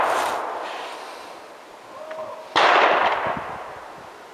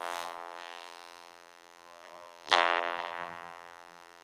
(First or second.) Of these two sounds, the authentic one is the first